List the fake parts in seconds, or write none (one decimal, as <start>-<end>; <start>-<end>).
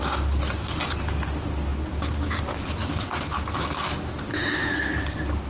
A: none